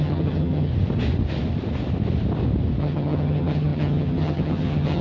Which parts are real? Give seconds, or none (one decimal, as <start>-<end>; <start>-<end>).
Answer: 0.7-2.8